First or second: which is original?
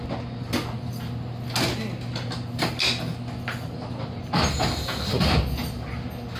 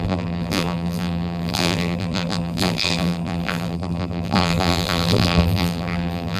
first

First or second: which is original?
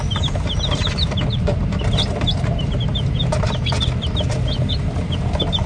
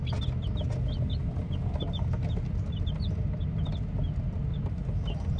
second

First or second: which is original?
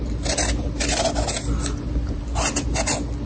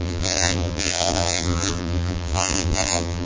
first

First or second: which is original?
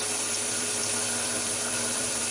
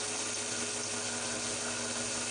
second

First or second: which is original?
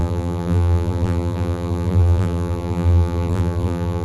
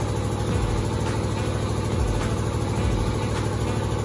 second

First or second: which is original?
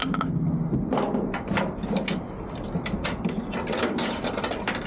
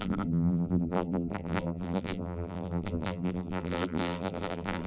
first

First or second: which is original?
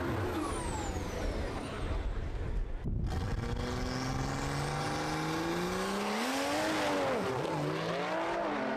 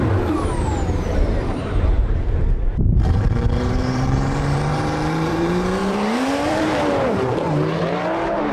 first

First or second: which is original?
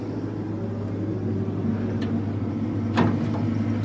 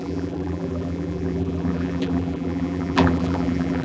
first